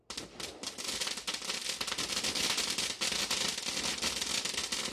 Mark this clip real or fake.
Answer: real